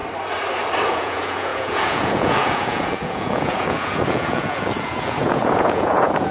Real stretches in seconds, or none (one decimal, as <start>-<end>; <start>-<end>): 0.0-0.9